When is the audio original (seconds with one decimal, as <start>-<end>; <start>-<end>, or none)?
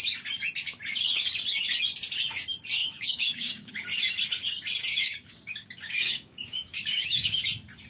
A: 0.0-2.8; 3.7-4.9; 7.4-7.9